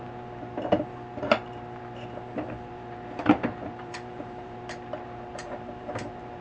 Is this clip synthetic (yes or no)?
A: yes